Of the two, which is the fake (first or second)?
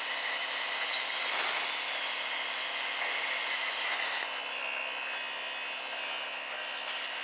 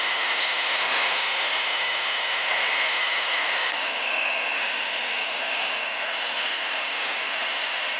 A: second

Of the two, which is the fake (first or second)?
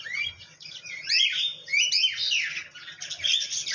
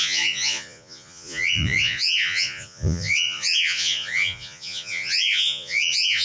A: second